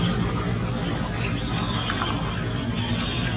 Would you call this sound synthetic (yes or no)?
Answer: no